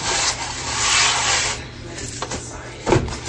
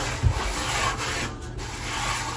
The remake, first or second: first